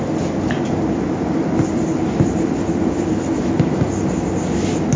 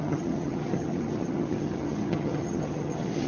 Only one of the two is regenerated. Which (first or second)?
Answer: second